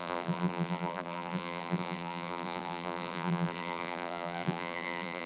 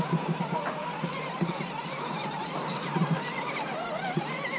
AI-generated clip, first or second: first